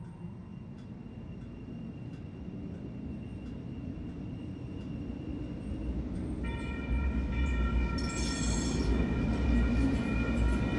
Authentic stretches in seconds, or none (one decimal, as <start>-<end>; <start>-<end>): 0.0-10.8